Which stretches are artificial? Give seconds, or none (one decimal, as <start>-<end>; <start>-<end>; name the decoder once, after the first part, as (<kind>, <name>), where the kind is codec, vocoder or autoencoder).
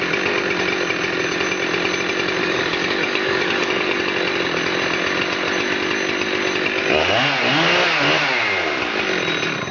2.4-4.0 (codec, DAC)